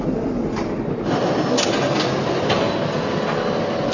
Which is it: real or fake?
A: real